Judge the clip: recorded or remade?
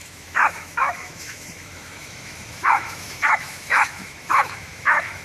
remade